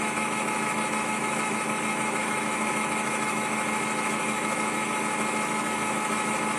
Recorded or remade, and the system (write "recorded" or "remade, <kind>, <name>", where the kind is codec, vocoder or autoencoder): remade, autoencoder, DAC-VAE